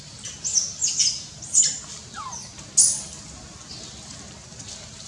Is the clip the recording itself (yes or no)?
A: yes